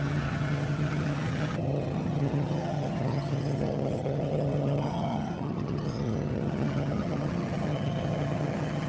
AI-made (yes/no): yes